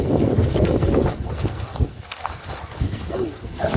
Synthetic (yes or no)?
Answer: yes